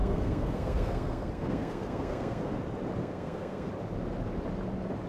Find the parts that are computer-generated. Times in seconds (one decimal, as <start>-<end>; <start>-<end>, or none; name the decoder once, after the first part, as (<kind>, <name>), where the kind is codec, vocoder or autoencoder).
0.0-2.5 (codec, SNAC); 3.0-3.7